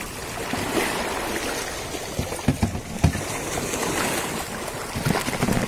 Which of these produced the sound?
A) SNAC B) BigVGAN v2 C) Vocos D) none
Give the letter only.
D